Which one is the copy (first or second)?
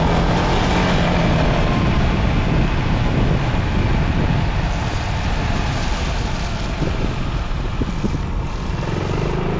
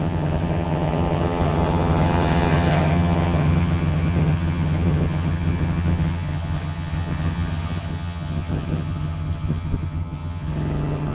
second